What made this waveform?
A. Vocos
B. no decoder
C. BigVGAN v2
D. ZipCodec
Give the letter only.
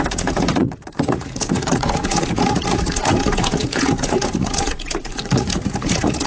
A